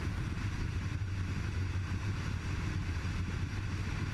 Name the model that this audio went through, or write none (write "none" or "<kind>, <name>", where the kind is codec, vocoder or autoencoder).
none